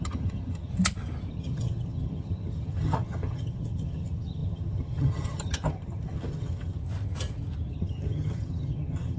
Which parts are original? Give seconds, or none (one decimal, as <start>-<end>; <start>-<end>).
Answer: 0.7-1.3; 6.8-7.7